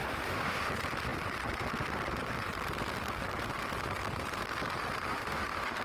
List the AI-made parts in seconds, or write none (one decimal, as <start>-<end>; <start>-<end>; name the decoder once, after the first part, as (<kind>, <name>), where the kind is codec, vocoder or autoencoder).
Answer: 0.0-0.7 (autoencoder, DAC-VAE); 5.1-5.8